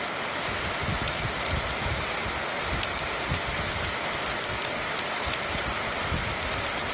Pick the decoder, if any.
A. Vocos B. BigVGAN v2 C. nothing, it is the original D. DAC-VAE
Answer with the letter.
C